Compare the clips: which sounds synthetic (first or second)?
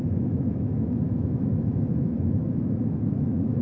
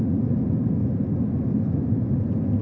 first